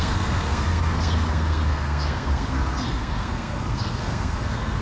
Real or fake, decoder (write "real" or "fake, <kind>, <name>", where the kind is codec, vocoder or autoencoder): fake, codec, SNAC